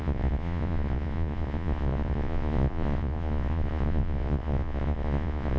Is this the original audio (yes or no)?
no